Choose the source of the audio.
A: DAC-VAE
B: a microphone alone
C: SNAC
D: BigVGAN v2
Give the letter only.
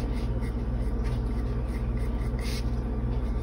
B